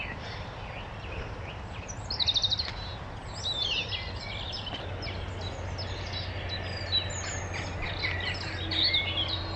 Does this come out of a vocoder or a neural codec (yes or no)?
no